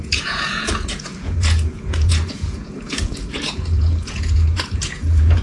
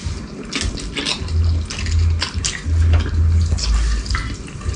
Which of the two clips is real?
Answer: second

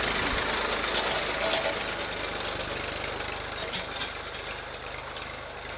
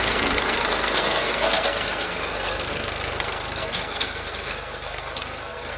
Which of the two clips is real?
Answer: first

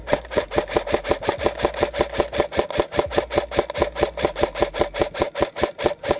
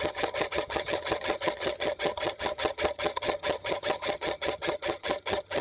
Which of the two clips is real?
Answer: first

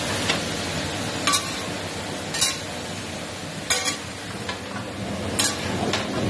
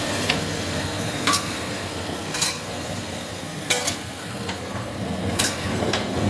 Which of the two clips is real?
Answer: first